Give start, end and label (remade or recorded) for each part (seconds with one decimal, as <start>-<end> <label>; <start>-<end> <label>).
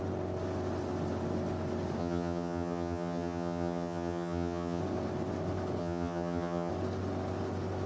0.0-2.0 recorded; 2.0-4.8 remade; 4.8-5.8 recorded; 5.8-6.7 remade; 6.7-7.9 recorded